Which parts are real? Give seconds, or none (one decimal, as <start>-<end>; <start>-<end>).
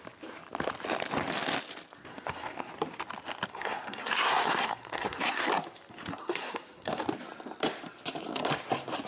0.0-2.1; 2.7-3.5; 5.4-6.1; 7.0-9.1